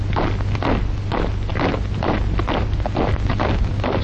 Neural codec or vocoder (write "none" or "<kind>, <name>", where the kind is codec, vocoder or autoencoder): none